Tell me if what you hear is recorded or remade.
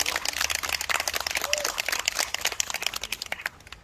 recorded